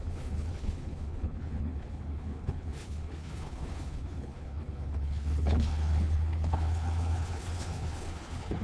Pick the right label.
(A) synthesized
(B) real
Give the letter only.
A